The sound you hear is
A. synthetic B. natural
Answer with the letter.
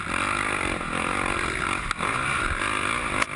B